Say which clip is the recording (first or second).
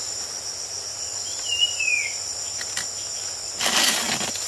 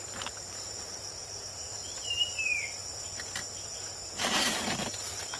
first